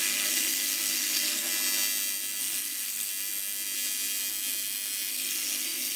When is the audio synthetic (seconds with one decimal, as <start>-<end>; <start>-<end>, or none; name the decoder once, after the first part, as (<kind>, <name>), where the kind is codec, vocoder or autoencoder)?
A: 0.0-1.5 (codec, SNAC); 2.4-3.1; 5.1-6.0